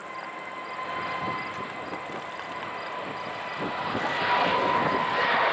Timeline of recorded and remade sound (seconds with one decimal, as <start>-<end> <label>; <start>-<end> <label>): 0.0-5.5 recorded